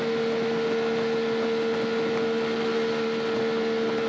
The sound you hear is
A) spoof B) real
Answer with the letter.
B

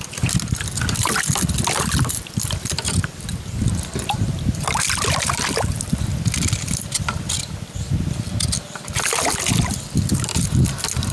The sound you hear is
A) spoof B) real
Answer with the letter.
B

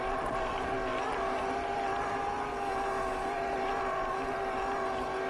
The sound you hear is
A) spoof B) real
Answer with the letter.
B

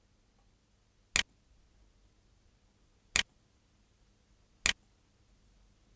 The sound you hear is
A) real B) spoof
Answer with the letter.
A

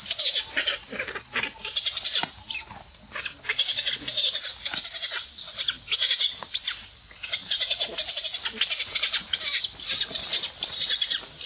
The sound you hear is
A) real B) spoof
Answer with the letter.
A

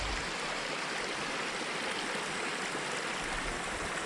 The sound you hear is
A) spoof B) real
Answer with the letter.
B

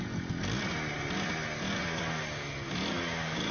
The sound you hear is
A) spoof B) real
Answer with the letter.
B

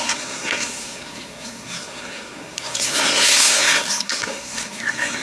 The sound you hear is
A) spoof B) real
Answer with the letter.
A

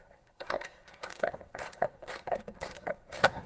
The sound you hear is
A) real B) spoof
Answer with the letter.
B